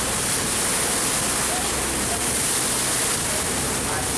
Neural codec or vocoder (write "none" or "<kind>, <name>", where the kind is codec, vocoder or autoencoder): none